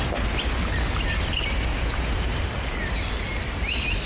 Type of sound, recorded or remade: recorded